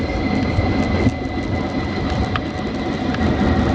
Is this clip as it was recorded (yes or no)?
yes